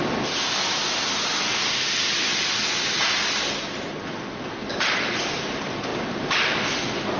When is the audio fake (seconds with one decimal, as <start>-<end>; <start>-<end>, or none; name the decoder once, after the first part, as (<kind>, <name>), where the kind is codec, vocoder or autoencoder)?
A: none